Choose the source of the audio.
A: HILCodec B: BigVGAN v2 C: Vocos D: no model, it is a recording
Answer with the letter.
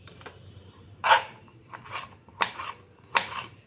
B